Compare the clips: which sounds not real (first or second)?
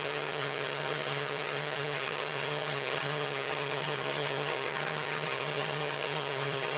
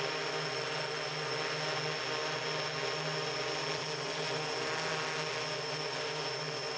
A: first